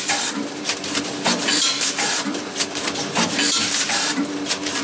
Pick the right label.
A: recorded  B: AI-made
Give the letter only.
B